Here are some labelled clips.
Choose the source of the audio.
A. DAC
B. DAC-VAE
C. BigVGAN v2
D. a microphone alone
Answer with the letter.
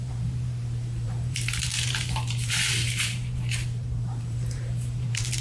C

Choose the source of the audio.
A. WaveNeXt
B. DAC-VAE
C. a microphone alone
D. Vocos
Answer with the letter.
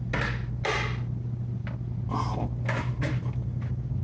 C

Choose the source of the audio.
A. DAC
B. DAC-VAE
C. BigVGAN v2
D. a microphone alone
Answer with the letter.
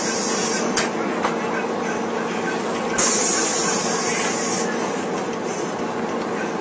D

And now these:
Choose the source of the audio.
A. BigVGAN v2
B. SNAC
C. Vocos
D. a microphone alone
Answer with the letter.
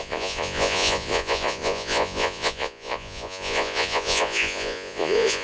C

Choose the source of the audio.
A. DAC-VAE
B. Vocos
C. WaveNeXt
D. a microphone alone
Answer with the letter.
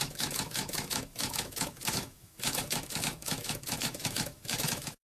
A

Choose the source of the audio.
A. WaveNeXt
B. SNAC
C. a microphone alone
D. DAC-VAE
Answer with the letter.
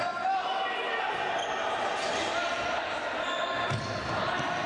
C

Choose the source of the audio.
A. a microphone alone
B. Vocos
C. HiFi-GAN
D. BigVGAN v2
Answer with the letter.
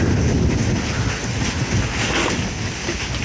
A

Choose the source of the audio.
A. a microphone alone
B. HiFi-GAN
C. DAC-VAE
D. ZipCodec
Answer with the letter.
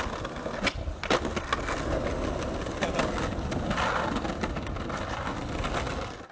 A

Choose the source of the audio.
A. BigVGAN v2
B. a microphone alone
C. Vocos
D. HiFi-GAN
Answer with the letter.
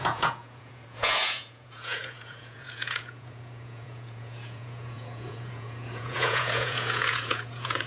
C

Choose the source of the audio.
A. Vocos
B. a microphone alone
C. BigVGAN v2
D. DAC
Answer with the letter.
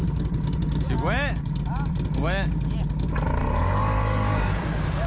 B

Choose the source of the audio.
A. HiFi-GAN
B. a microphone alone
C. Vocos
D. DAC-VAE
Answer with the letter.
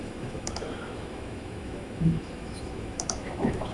D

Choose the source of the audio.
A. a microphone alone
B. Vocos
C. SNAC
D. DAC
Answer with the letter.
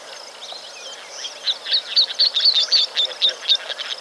A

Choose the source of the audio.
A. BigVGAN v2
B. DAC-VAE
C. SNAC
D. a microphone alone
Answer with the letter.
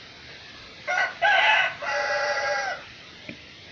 D